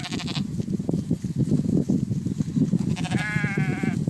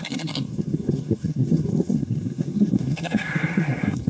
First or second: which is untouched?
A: first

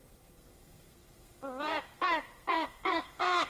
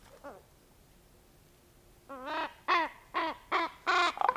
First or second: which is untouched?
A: second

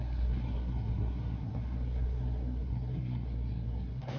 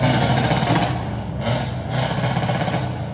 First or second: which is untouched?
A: second